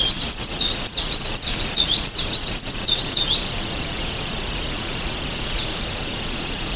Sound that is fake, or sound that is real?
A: fake